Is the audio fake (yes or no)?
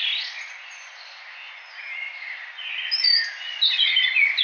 no